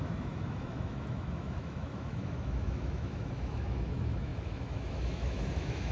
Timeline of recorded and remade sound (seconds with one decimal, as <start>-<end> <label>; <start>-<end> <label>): 0.0-5.9 remade